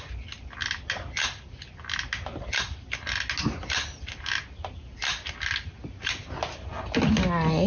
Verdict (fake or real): real